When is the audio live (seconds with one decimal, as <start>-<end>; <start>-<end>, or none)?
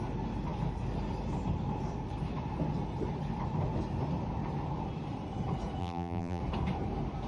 0.0-5.8; 6.4-7.3